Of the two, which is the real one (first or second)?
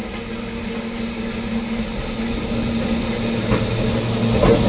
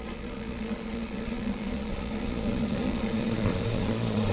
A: first